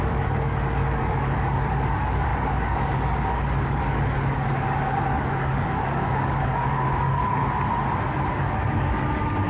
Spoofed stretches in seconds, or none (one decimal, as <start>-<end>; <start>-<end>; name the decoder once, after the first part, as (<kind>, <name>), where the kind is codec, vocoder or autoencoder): 0.0-7.4 (codec, DAC); 8.3-9.5